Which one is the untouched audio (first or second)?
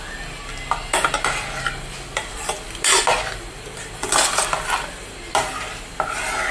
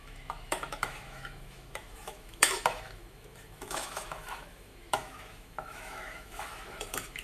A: first